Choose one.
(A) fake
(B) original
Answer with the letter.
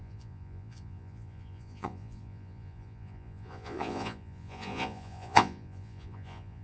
A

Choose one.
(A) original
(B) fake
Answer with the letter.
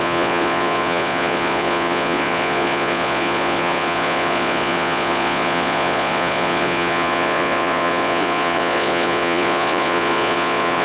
B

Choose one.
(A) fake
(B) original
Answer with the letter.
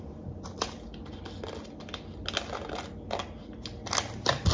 B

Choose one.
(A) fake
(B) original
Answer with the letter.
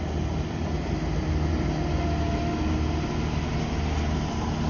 B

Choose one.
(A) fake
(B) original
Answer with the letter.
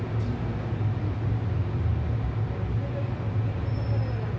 B